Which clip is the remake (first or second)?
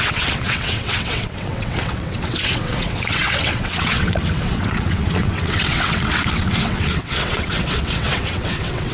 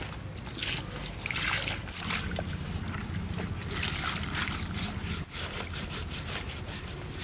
first